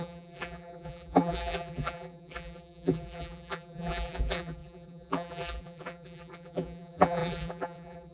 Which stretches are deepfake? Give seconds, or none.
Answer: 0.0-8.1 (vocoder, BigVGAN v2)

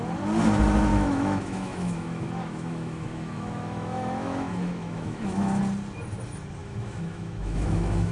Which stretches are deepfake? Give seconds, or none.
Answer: 0.9-5.6 (autoencoder, DAC-VAE); 6.6-8.1

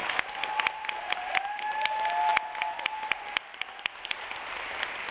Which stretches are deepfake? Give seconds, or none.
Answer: none

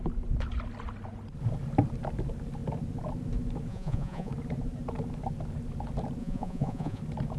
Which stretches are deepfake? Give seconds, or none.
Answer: 3.7-4.3 (vocoder, Vocos); 6.2-7.0

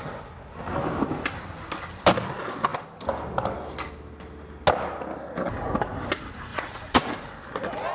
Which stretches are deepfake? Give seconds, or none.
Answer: 6.5-7.1 (vocoder, Vocos)

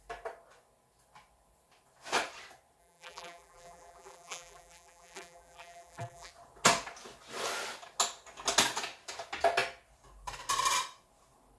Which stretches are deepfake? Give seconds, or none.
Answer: 2.8-6.3 (vocoder, BigVGAN v2)